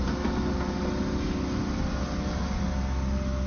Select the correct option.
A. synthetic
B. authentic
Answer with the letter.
B